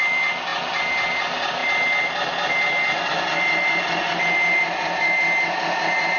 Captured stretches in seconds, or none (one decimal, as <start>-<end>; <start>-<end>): 0.0-6.2